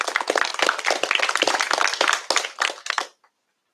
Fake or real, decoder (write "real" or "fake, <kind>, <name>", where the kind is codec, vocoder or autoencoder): real